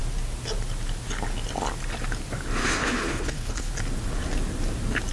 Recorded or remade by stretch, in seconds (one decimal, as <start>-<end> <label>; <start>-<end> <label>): 0.0-2.6 recorded; 2.6-3.7 remade; 3.7-5.1 recorded